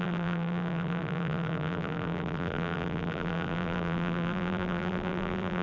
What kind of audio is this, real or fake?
fake